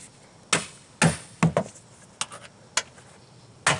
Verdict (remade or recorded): recorded